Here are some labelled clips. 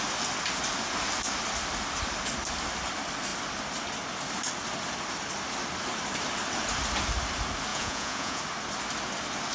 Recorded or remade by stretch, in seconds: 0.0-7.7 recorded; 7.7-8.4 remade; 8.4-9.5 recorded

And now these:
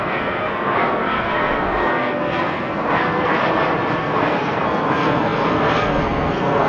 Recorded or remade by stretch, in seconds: 0.0-3.4 remade; 3.4-4.0 recorded; 4.0-6.7 remade

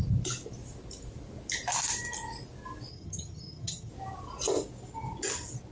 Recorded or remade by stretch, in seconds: 0.0-2.9 recorded; 2.9-3.9 remade; 3.9-5.7 recorded

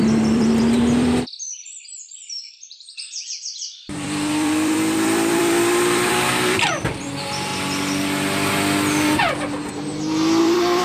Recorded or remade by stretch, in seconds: 0.0-7.5 remade; 7.5-10.4 recorded; 10.4-10.8 remade

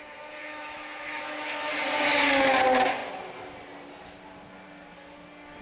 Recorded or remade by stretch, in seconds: 0.0-0.4 recorded; 0.4-1.7 remade; 1.7-5.6 recorded

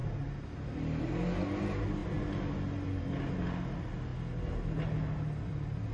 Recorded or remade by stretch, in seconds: 0.0-5.9 recorded